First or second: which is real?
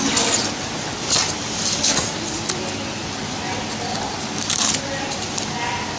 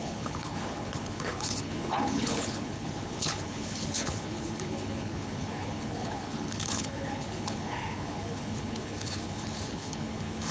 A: first